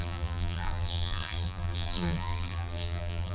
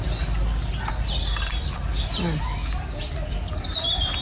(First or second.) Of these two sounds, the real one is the second